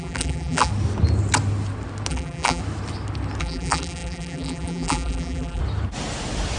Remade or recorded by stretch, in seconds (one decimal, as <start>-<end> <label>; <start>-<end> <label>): 0.0-0.7 remade; 0.7-2.1 recorded; 2.1-2.6 remade; 2.6-3.4 recorded; 3.4-5.6 remade; 5.6-6.6 recorded